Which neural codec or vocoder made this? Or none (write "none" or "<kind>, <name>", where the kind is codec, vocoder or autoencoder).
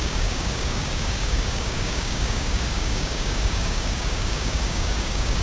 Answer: codec, DAC